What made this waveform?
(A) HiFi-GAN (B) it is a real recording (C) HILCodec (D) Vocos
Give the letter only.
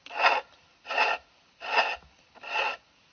B